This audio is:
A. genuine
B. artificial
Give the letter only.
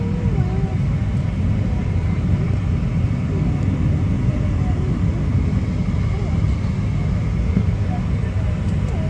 A